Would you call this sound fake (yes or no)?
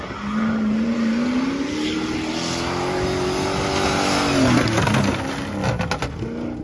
no